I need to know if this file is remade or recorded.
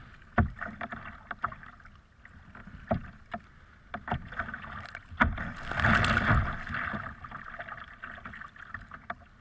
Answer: recorded